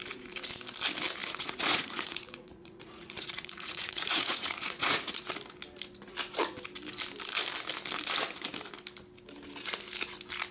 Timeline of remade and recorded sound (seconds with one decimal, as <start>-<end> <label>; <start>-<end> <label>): 0.0-1.2 recorded; 1.2-5.2 remade; 5.2-10.5 recorded